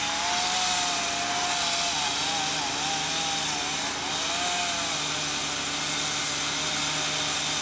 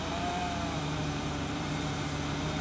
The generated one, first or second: second